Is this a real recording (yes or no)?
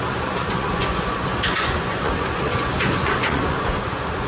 no